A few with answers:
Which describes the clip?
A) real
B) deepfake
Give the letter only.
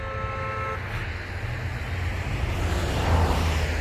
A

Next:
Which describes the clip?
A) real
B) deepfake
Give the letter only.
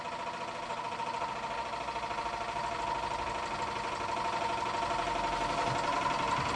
A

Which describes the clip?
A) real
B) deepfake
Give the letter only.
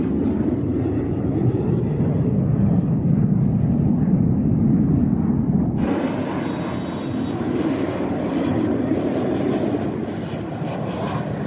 A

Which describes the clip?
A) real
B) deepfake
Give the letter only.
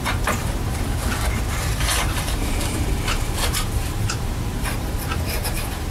B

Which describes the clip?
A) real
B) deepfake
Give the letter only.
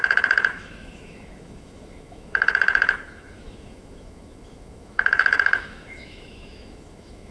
B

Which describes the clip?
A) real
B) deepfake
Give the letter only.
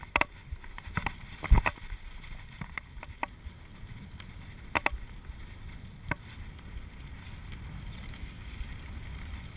A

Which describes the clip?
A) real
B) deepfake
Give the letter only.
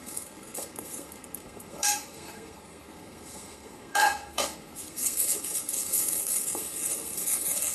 B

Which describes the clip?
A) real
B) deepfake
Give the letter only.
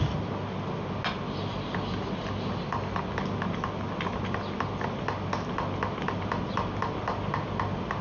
A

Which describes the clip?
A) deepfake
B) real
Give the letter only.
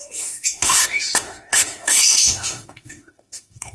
A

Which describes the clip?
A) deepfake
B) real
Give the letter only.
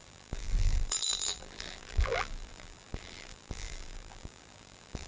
A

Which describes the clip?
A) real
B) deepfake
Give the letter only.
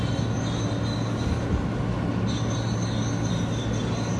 A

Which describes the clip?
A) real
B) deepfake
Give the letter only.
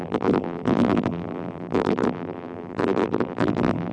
B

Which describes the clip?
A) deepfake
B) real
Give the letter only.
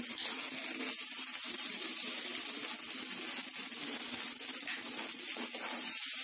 B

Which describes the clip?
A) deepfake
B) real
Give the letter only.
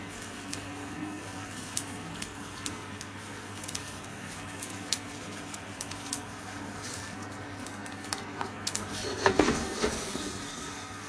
A